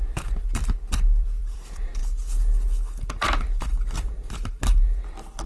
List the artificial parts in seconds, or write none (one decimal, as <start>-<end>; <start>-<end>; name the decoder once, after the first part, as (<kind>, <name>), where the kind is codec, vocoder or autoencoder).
0.0-0.6 (vocoder, BigVGAN v2); 1.2-2.0; 3.1-5.5